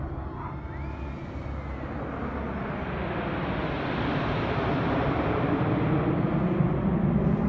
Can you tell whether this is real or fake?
real